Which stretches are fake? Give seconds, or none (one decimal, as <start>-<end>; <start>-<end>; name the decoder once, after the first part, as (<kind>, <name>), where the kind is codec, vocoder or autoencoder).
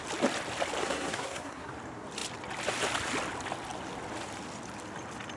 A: 0.8-1.7 (codec, SNAC)